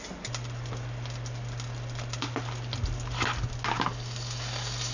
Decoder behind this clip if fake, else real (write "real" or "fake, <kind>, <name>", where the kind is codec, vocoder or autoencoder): real